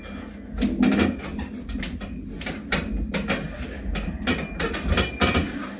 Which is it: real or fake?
real